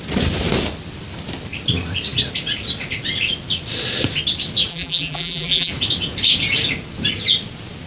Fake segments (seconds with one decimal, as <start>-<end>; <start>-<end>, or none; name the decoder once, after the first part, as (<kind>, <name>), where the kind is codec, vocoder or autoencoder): 4.7-5.7 (vocoder, BigVGAN v2)